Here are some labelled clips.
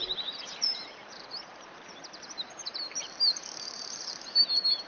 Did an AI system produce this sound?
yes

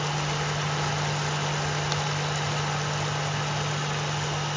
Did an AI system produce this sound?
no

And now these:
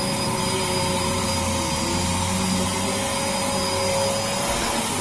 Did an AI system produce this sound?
no